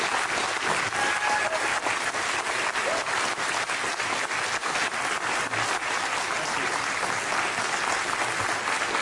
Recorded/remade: recorded